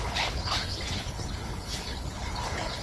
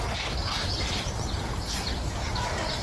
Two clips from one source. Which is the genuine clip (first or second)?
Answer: second